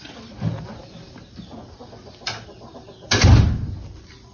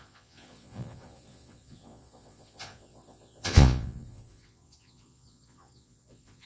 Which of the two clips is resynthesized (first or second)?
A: second